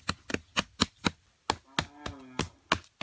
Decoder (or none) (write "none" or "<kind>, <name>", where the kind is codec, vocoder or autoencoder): none